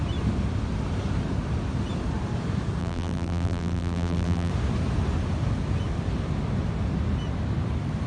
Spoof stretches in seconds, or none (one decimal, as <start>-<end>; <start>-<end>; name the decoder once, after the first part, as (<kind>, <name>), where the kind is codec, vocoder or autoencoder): 2.8-4.5 (vocoder, BigVGAN v2)

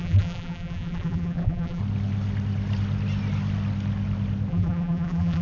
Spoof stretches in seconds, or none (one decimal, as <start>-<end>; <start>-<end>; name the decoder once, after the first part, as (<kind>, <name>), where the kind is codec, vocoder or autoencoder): 0.0-1.8 (vocoder, BigVGAN v2); 4.5-5.4